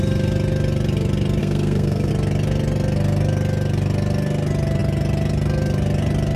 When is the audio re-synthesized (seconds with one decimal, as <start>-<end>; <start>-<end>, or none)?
1.4-2.1